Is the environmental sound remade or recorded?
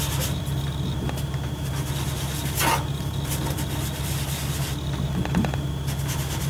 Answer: recorded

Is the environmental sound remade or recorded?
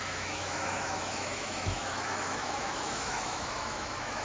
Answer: remade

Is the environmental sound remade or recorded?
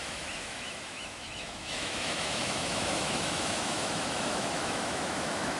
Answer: remade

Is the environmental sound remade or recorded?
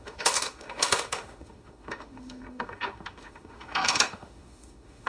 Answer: remade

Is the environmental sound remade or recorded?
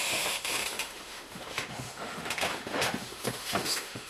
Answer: remade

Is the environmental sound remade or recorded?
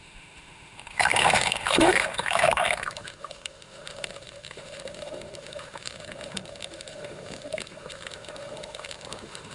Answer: remade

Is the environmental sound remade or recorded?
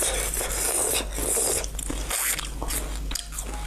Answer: recorded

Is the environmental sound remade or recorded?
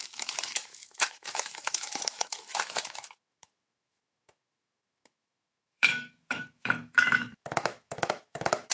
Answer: remade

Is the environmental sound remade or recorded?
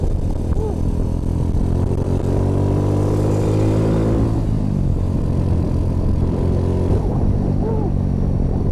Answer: recorded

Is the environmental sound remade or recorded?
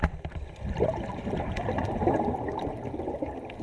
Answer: recorded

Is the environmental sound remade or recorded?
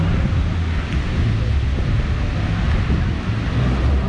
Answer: recorded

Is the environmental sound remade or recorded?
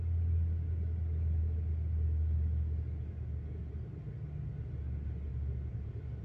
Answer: recorded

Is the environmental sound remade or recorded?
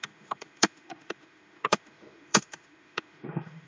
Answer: remade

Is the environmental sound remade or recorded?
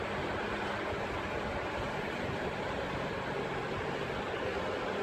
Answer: recorded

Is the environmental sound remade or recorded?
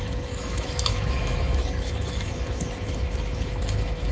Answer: remade